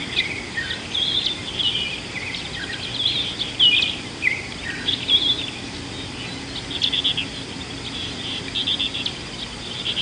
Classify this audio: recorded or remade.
recorded